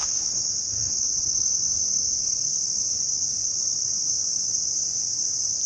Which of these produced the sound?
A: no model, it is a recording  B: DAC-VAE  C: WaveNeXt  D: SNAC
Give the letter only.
B